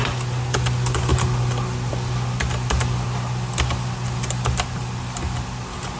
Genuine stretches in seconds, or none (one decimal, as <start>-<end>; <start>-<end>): 0.0-6.0